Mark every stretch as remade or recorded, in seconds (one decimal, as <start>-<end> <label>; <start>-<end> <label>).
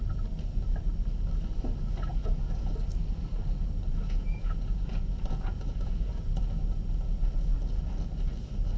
0.0-2.1 recorded; 2.1-2.7 remade; 2.7-3.9 recorded; 3.9-6.4 remade; 6.4-8.8 recorded